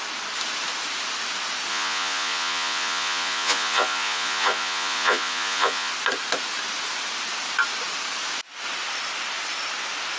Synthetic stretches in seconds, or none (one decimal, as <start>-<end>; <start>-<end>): 1.7-5.9